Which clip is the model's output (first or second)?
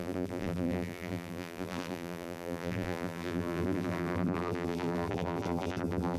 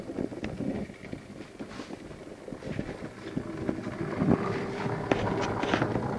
first